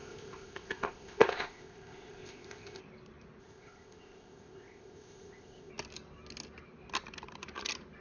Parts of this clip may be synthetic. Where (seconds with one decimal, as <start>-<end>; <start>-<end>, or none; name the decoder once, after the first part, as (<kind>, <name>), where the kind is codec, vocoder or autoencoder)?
0.0-2.8 (codec, ZipCodec); 3.4-5.7